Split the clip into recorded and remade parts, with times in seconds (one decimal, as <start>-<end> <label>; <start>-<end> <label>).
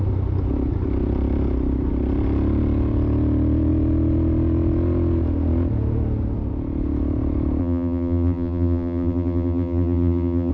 0.0-7.6 recorded; 7.6-10.5 remade